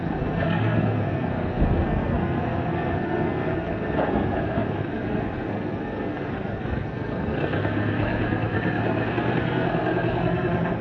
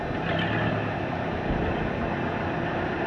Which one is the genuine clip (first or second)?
second